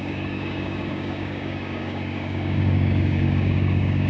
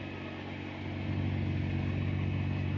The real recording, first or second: second